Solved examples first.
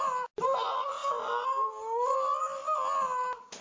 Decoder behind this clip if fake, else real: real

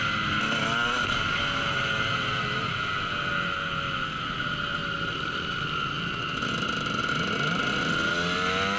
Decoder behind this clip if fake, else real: real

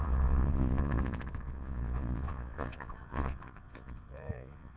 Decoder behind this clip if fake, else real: fake, vocoder, Vocos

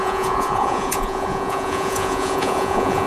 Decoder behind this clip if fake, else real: fake, vocoder, Vocos